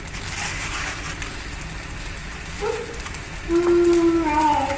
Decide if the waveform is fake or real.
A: real